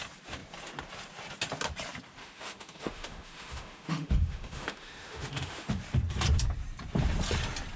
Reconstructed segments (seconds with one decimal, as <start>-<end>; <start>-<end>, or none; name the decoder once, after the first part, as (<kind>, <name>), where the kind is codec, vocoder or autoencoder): 2.2-5.8 (autoencoder, DAC-VAE)